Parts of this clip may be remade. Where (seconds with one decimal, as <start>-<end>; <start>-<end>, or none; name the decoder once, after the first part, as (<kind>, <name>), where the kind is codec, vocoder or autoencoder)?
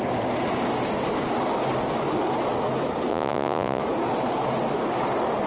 3.1-3.8 (vocoder, Vocos)